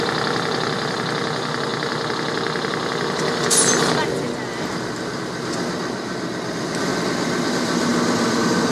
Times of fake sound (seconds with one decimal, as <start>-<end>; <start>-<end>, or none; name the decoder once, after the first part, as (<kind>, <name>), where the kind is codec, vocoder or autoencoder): 0.0-1.7 (vocoder, BigVGAN v2); 6.5-6.9; 7.5-7.9